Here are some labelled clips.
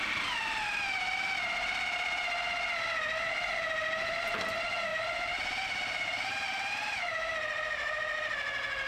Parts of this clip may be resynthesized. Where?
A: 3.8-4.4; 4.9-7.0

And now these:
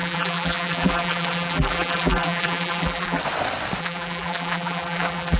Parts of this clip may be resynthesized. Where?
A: 0.0-3.2; 3.8-5.4

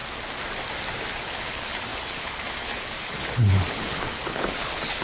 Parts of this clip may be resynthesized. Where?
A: 1.2-5.0

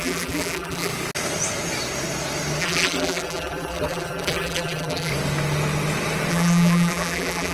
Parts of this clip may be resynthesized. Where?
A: 0.0-0.9; 2.6-5.1; 6.3-7.5

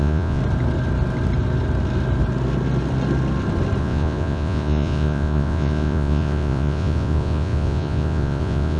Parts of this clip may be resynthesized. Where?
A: 0.0-0.4; 3.8-8.8

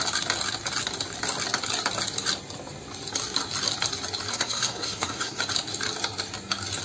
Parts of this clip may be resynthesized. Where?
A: 4.3-5.4